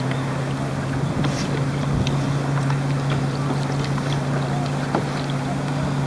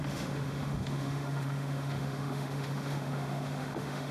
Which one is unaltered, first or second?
first